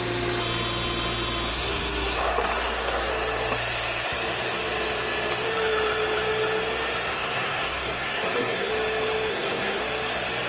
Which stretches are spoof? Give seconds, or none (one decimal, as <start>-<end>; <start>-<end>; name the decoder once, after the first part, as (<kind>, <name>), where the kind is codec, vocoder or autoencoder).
1.5-3.1 (codec, SNAC); 7.1-8.7; 9.3-9.8